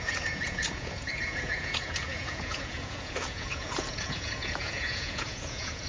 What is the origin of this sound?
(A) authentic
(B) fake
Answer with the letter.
B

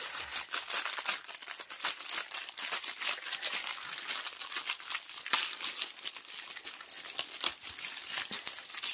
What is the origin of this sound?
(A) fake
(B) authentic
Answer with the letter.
B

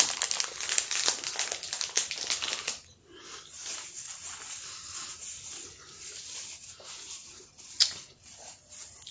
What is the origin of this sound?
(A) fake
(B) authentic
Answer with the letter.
B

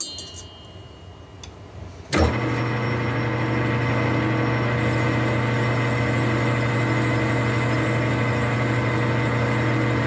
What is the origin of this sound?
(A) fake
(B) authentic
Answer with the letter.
B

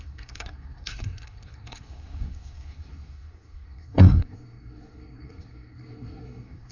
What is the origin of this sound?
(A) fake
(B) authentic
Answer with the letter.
A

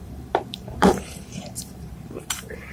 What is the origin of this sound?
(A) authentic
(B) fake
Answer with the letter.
B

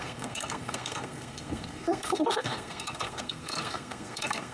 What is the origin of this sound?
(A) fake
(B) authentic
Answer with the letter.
A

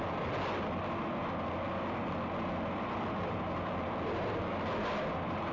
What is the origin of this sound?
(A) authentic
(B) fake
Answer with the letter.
A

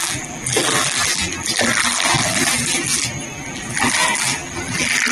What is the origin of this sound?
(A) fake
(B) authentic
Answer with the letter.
A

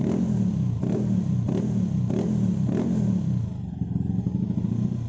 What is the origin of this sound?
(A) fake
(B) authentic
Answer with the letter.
B